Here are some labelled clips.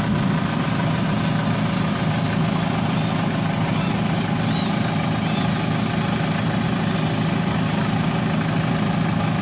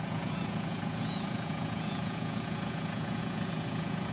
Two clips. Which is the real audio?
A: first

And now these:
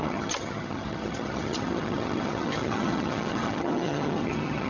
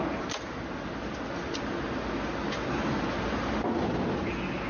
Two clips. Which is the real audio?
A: second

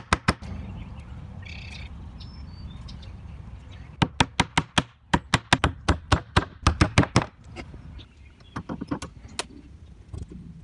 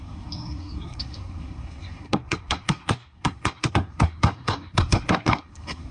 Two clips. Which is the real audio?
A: first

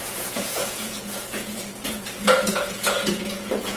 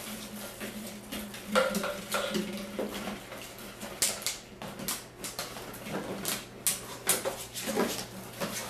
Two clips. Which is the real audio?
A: second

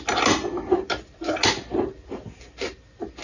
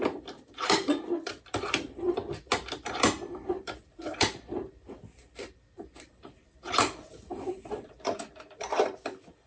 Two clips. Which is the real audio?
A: first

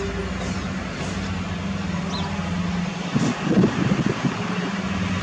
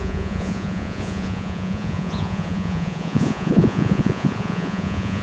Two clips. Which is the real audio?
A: first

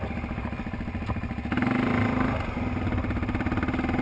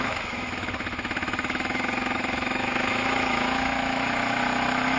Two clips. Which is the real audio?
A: first